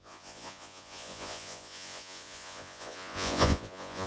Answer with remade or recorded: remade